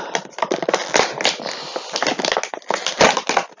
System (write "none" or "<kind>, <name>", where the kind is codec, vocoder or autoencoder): none